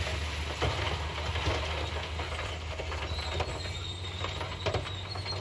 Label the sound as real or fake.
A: real